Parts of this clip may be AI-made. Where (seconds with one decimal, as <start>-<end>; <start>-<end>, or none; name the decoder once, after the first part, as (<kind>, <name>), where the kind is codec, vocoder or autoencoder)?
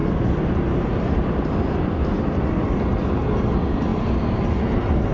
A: none